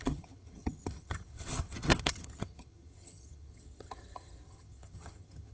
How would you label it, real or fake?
fake